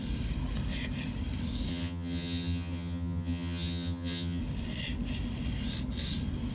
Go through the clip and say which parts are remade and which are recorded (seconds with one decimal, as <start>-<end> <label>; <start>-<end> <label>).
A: 0.0-1.7 recorded; 1.7-4.4 remade; 4.4-6.5 recorded

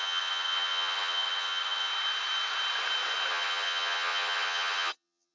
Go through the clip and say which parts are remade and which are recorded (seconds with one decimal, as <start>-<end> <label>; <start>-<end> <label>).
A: 0.0-1.9 remade; 1.9-3.3 recorded; 3.3-5.3 remade

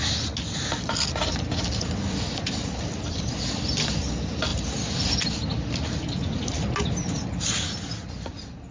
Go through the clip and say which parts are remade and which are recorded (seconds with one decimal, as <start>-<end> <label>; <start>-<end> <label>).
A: 0.0-8.7 recorded

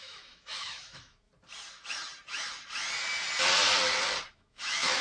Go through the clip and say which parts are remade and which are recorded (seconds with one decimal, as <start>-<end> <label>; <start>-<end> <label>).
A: 0.0-1.3 remade; 1.3-4.3 recorded; 4.3-5.0 remade

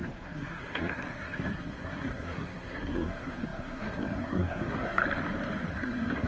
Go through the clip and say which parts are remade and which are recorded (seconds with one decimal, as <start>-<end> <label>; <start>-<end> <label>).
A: 0.0-5.0 remade; 5.0-5.7 recorded; 5.7-6.3 remade

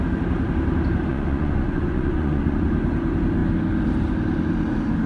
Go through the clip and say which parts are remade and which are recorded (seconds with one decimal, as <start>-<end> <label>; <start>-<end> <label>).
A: 0.0-1.1 recorded; 1.1-2.7 remade; 2.7-5.1 recorded

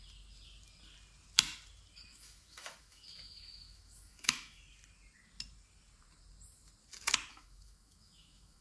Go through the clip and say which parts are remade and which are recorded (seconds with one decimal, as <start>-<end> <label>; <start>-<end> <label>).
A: 0.0-2.1 recorded; 2.1-4.6 remade; 4.6-7.3 recorded; 7.3-8.6 remade